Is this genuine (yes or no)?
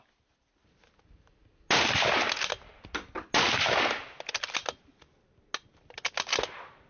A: yes